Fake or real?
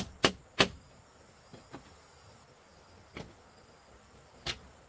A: real